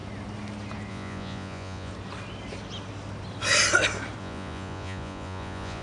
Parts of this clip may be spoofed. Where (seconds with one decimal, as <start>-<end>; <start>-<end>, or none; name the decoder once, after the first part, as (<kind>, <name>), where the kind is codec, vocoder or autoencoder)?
0.9-1.9 (vocoder, Vocos); 4.2-5.8